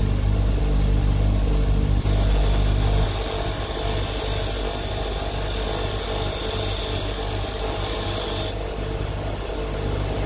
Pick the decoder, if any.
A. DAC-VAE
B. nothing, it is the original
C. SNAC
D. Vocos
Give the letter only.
B